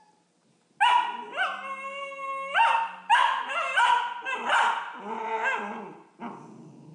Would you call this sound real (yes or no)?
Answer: yes